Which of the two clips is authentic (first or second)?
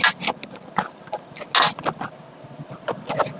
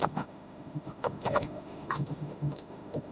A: first